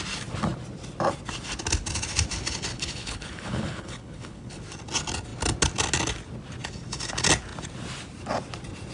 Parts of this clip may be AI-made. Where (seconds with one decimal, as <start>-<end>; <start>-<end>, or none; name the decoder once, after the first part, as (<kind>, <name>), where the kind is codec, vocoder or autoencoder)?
2.7-4.6 (codec, HILCodec)